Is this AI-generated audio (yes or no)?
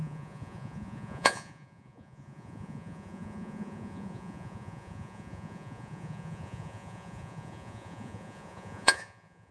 yes